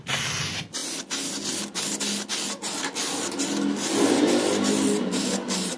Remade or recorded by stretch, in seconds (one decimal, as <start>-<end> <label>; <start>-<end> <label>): 0.0-5.8 recorded